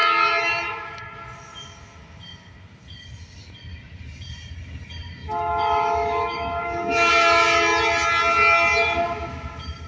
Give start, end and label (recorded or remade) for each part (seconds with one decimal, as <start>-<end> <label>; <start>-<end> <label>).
0.0-5.2 recorded; 5.2-7.1 remade; 7.1-9.9 recorded

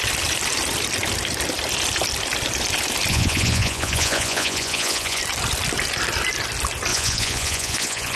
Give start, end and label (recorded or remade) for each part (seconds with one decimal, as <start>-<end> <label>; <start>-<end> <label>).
0.0-3.1 recorded; 3.1-5.2 remade; 5.2-6.9 recorded; 6.9-8.2 remade

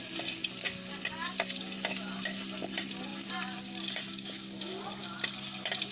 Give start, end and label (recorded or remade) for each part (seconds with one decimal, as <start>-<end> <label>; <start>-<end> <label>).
0.0-5.9 recorded

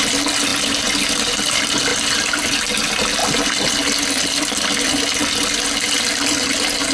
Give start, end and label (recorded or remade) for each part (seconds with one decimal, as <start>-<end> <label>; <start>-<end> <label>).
0.0-6.9 recorded

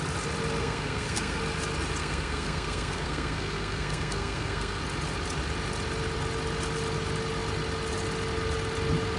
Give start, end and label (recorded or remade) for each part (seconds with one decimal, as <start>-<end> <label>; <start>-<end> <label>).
0.0-0.6 recorded; 0.6-1.4 remade; 1.4-2.0 recorded; 2.0-4.8 remade; 4.8-9.2 recorded